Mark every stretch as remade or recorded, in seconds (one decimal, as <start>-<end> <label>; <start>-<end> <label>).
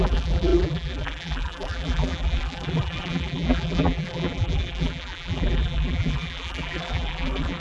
0.0-7.6 remade